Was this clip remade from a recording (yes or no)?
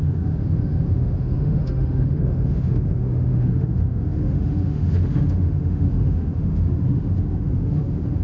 yes